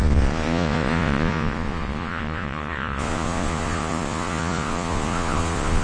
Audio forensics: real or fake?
fake